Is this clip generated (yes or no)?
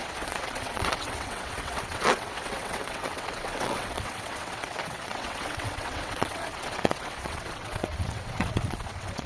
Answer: yes